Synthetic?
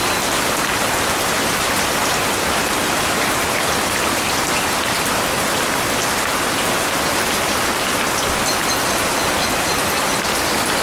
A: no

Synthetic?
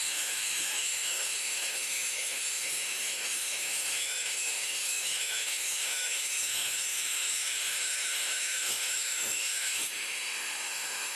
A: yes